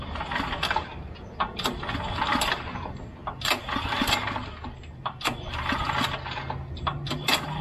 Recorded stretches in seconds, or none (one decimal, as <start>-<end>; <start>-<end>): 0.0-7.6